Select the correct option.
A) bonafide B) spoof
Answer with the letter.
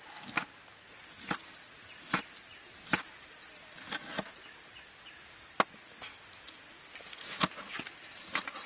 A